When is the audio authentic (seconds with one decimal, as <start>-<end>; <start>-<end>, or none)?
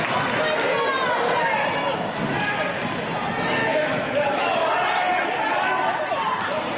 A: 0.0-3.6; 4.6-6.8